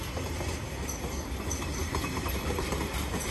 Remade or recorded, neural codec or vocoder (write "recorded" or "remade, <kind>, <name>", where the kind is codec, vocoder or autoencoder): recorded